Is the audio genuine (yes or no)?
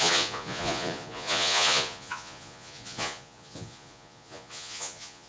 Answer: no